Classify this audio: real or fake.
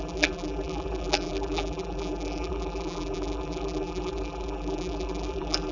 fake